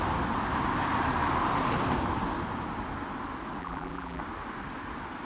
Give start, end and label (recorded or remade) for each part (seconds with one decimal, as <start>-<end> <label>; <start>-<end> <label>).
0.0-3.6 recorded; 3.6-4.2 remade; 4.2-5.2 recorded